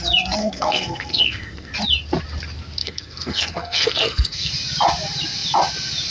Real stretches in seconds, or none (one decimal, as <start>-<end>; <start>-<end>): 0.0-0.4; 1.7-2.8; 4.5-6.1